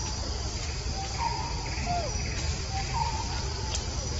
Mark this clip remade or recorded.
remade